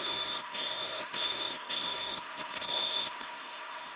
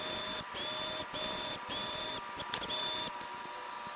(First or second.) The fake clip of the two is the first